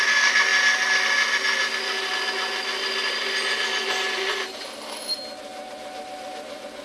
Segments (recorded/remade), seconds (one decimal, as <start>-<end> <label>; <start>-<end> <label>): 0.0-6.8 recorded